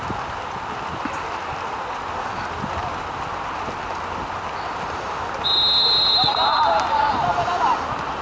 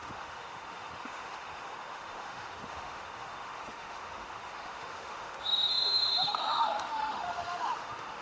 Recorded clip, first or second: first